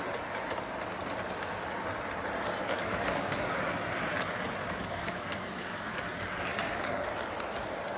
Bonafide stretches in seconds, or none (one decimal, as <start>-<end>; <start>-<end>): 0.0-2.7; 3.6-4.6; 6.0-6.5; 7.1-8.0